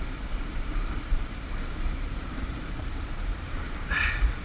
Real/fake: fake